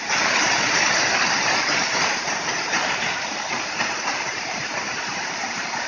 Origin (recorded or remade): remade